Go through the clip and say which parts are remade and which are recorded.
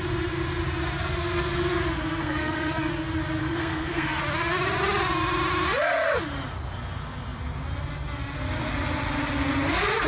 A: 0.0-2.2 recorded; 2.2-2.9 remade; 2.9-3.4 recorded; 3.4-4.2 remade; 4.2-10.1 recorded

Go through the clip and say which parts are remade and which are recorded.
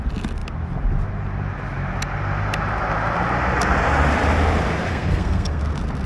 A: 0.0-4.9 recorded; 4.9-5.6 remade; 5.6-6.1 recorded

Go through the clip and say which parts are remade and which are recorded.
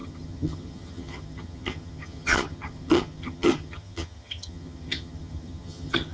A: 0.0-6.1 remade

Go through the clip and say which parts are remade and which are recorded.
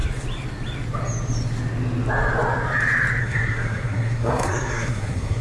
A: 0.0-3.2 recorded; 3.2-5.4 remade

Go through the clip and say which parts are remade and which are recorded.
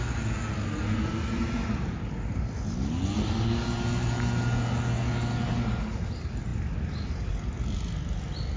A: 0.0-8.6 recorded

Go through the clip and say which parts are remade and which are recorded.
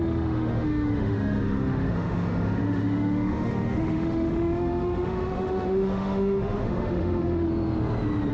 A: 0.0-7.5 remade; 7.5-8.3 recorded